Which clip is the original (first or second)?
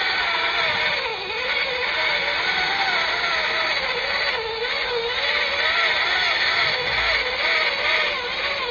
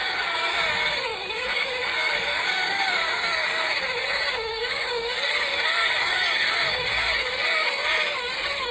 first